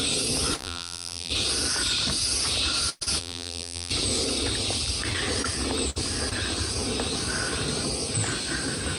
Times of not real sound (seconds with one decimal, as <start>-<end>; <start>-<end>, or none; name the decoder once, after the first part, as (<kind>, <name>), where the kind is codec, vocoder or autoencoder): 0.6-1.3 (vocoder, BigVGAN v2); 3.2-3.9